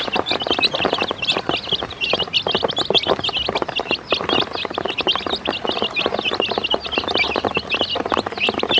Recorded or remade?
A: recorded